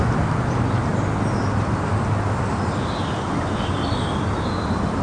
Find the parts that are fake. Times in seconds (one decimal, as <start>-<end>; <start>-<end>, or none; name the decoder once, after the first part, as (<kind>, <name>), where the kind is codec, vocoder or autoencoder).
none